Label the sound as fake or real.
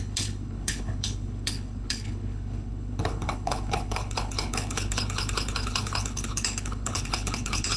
fake